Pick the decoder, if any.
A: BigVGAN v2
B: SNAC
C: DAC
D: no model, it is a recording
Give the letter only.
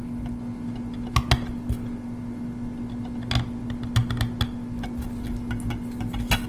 D